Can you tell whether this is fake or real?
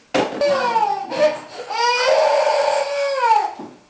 real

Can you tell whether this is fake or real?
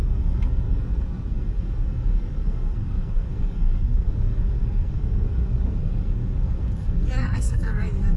fake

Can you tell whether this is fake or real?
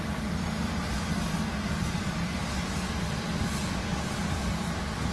real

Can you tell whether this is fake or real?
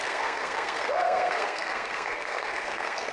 fake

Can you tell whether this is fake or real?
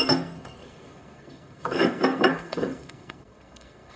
fake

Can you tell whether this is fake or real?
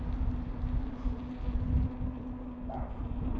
real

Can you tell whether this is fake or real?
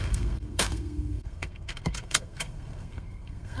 fake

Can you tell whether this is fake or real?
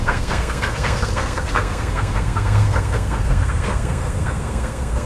fake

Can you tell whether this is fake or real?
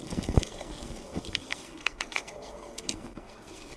fake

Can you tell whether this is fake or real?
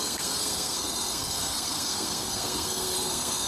fake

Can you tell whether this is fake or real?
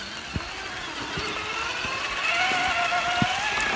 real